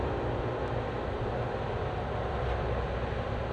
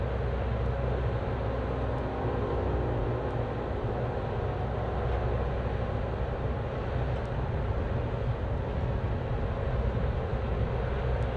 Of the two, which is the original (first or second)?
second